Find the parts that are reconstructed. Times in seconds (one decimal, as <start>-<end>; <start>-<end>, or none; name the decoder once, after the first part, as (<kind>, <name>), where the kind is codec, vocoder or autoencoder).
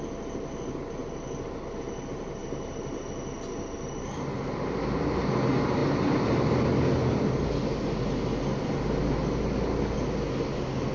none